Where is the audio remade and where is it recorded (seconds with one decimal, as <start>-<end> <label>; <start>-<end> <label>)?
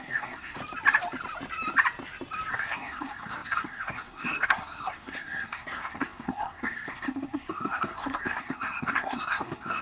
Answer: 0.0-0.6 remade; 0.6-2.5 recorded; 2.5-9.8 remade